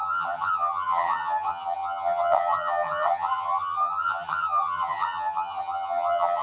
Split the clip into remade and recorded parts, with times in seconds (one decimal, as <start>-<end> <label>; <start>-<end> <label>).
0.0-6.4 remade

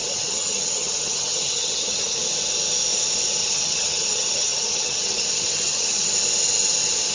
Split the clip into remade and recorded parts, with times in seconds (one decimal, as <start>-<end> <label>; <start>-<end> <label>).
0.0-2.2 remade; 2.2-3.4 recorded; 3.4-6.1 remade; 6.1-7.1 recorded

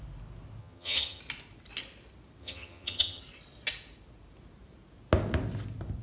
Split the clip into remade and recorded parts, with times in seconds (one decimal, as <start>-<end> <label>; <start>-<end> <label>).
0.0-0.6 recorded; 0.6-1.2 remade; 1.2-2.4 recorded; 2.4-3.2 remade; 3.2-6.0 recorded

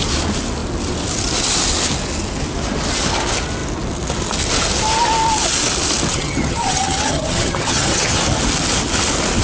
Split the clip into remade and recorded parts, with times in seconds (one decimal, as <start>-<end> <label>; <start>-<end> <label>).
0.0-6.1 recorded; 6.1-8.2 remade; 8.2-9.4 recorded

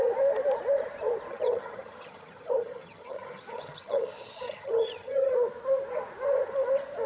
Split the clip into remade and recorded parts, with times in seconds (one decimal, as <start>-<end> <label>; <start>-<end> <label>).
0.0-1.3 recorded; 1.3-5.3 remade; 5.3-7.1 recorded

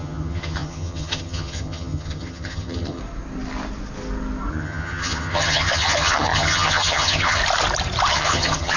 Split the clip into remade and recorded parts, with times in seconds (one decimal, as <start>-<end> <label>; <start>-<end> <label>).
0.0-3.0 remade; 3.0-4.5 recorded; 4.5-7.4 remade; 7.4-8.1 recorded; 8.1-8.8 remade

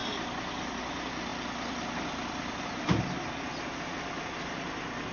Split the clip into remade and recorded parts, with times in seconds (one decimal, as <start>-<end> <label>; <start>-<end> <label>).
0.0-5.1 recorded

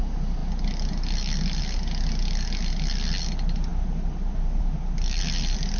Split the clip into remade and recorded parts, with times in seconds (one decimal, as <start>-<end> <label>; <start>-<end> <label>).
0.0-5.8 recorded